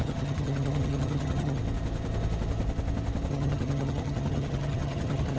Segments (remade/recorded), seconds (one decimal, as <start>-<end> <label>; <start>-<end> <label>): 0.0-1.6 remade; 1.6-3.3 recorded; 3.3-5.4 remade